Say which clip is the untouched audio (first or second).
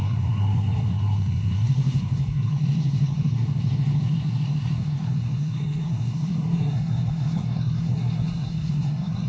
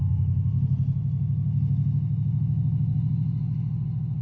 second